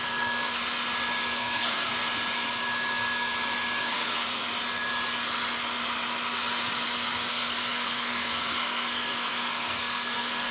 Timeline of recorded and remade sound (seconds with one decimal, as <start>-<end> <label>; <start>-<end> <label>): 0.0-0.6 remade; 0.6-1.4 recorded; 1.4-1.9 remade; 1.9-3.8 recorded; 3.8-4.4 remade; 4.4-7.3 recorded; 7.3-10.5 remade